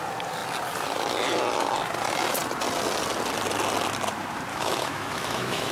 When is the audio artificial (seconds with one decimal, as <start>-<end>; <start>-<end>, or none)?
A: 4.5-5.7